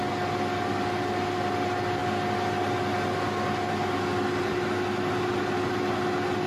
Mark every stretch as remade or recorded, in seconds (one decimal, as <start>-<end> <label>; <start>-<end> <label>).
0.0-6.5 recorded